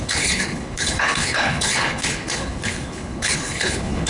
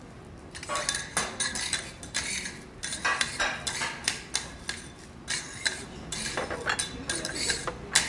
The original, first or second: second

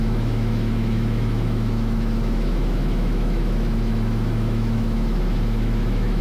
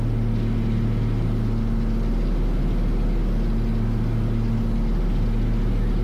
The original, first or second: second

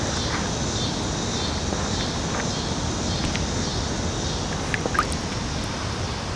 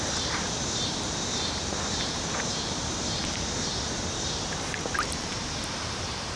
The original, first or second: first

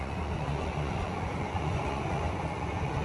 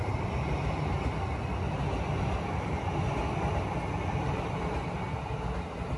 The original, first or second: second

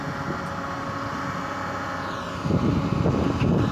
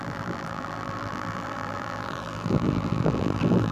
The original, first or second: first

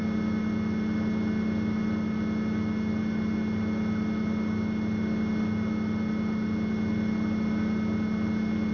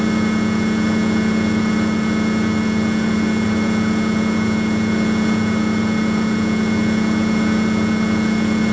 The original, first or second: first